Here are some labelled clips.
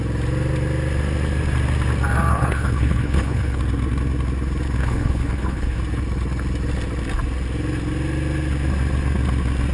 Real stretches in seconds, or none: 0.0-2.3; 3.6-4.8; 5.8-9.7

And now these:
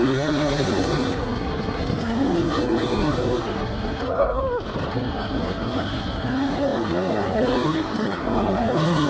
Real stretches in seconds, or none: 4.4-4.9

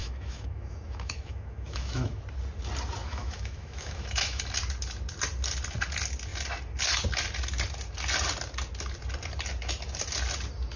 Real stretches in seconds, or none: 2.2-3.0; 4.4-10.8

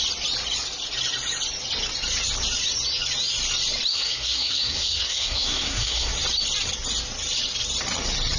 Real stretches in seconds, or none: 0.0-3.9; 6.1-8.4

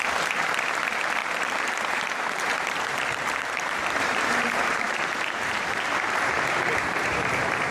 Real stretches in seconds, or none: 0.0-1.2; 5.8-6.7; 7.3-7.7

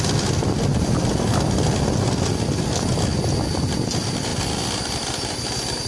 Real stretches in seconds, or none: 0.0-5.9

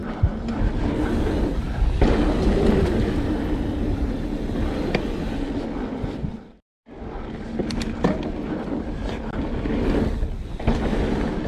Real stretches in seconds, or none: 0.0-11.5